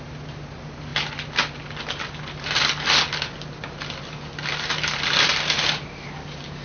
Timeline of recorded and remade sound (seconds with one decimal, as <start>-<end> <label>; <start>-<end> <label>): 0.0-6.6 recorded